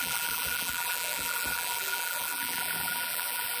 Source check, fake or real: fake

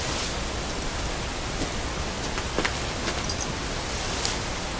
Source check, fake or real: real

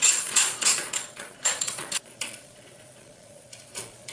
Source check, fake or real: fake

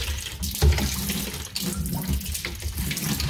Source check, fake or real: real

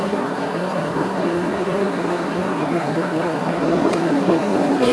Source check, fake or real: fake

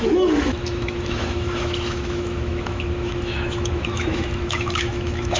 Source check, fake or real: fake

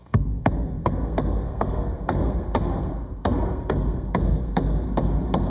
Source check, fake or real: fake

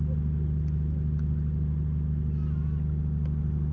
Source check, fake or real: real